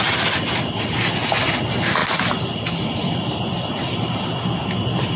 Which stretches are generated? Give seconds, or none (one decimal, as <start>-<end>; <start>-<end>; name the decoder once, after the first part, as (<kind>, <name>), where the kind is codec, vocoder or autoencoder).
none